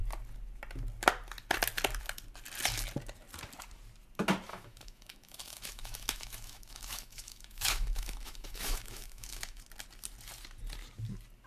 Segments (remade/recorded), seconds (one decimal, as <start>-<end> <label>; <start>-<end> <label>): 0.0-4.5 recorded; 4.5-9.6 remade; 9.6-11.5 recorded